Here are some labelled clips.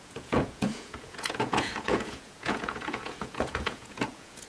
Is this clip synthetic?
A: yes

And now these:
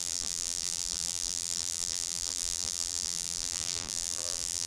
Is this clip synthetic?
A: yes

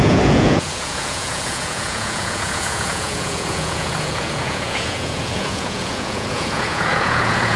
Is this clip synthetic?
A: yes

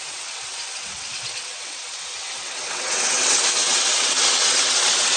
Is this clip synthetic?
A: yes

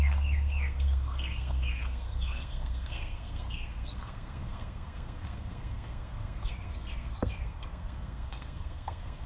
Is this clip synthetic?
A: yes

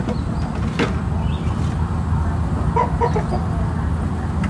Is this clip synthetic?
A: no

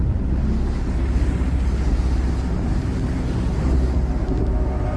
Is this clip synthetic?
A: no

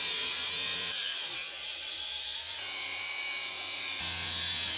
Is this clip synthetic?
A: yes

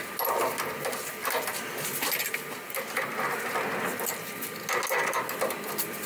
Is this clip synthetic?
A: no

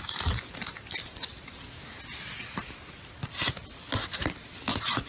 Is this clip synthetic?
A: no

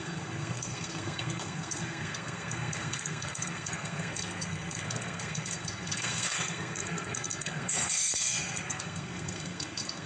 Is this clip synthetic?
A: yes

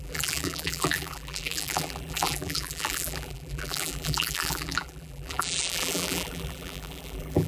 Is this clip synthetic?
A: yes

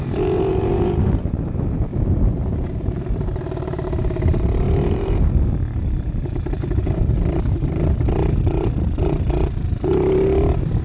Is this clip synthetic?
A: yes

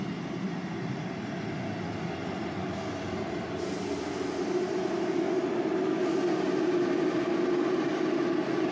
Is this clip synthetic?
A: no